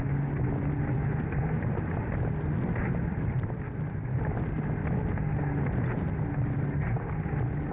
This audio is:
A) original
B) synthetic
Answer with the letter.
A